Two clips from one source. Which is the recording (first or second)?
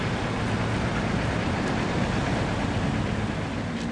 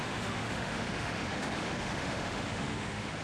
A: first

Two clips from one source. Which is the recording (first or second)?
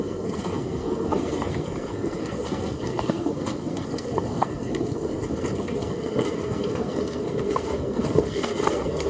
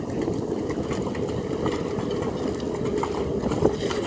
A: second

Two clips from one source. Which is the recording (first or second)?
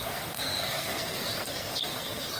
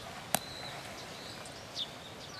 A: second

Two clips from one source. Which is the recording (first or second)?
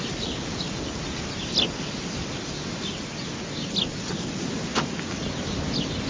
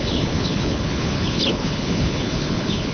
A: first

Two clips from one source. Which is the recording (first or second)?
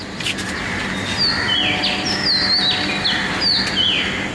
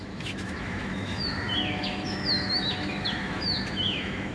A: first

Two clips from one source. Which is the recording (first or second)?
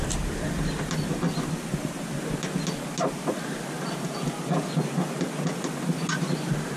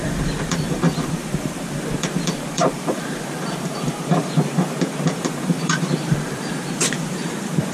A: first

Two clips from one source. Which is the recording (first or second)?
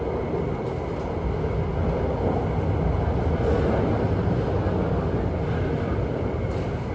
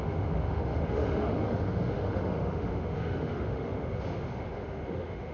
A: first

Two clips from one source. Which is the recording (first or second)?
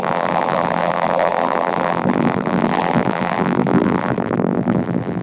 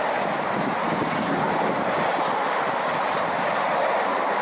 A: second